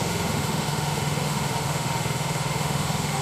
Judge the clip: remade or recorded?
remade